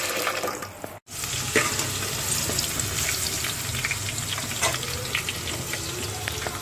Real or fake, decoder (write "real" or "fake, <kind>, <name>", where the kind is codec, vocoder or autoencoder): real